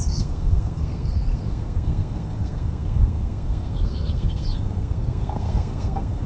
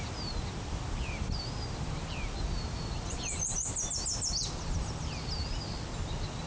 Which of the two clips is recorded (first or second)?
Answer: second